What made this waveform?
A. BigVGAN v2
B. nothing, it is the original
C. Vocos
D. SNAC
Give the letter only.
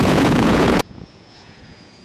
C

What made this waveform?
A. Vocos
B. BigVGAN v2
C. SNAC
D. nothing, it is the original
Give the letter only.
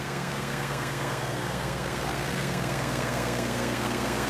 C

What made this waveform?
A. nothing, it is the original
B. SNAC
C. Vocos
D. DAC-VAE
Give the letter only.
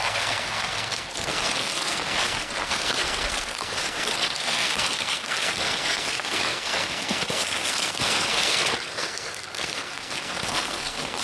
B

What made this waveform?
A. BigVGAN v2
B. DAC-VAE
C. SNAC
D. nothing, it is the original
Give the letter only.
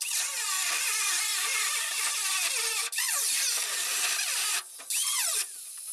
A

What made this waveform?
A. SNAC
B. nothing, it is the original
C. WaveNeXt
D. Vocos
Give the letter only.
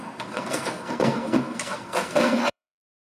A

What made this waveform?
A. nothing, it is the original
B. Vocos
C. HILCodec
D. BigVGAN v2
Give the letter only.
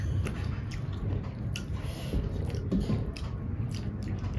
D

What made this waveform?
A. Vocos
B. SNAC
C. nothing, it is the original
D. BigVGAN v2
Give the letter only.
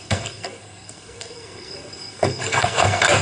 B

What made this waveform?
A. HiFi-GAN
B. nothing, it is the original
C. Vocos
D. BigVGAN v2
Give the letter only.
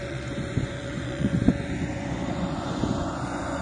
C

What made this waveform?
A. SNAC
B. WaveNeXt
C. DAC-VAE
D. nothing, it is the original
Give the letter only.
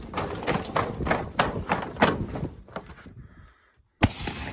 D